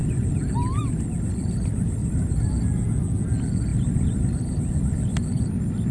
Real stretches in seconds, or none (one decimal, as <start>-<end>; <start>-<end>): 0.0-2.0; 2.5-3.7; 4.7-5.9